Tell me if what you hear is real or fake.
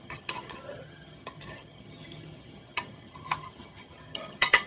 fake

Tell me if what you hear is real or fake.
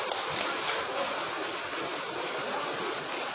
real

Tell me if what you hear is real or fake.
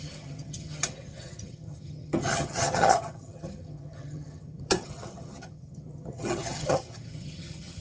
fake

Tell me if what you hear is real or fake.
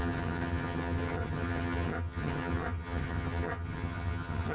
fake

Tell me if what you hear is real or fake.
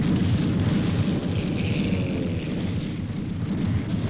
real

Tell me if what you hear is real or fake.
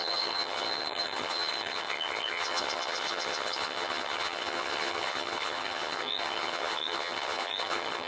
fake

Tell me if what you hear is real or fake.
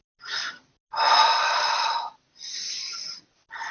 real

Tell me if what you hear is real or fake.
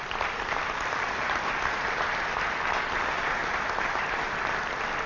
real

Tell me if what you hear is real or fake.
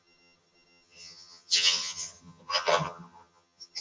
fake